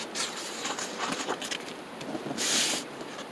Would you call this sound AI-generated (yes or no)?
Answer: yes